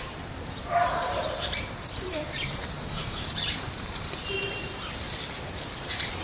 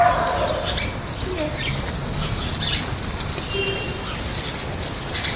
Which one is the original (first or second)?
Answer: second